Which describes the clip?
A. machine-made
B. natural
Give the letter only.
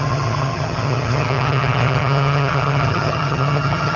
A